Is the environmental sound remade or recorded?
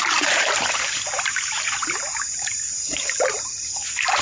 remade